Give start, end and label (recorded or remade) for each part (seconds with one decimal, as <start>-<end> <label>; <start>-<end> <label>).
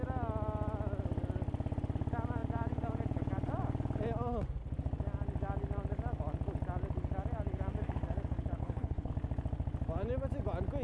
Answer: 0.0-8.6 recorded; 8.6-9.1 remade; 9.1-10.8 recorded